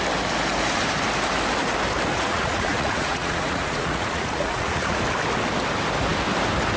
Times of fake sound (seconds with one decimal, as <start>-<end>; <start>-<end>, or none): 2.1-5.0